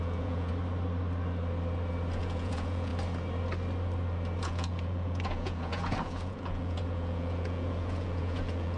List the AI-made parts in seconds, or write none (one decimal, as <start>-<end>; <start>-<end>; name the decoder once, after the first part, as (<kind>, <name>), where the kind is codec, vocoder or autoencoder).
0.0-0.5 (vocoder, Vocos); 2.1-2.9; 4.4-8.8